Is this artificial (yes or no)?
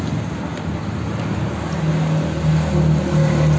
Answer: no